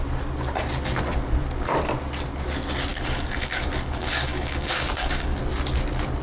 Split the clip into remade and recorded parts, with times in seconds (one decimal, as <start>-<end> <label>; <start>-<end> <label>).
0.0-2.9 recorded; 2.9-5.4 remade; 5.4-6.2 recorded